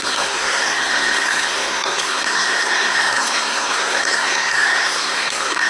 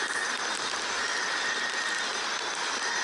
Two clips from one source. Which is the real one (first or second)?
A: second